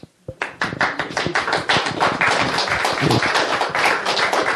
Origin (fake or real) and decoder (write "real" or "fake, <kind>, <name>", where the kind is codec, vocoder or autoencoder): real